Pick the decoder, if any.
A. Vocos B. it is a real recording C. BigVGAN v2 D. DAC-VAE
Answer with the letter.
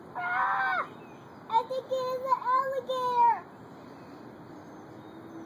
B